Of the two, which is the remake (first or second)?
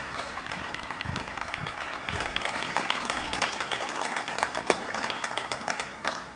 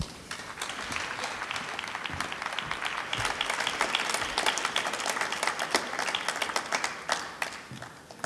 first